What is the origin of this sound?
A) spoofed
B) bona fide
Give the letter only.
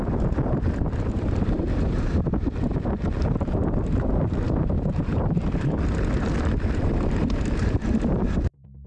B